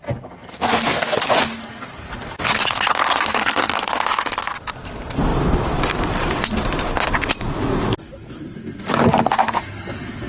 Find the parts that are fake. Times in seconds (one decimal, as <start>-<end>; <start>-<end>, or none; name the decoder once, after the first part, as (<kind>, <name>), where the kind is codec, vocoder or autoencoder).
5.3-6.9 (vocoder, BigVGAN v2)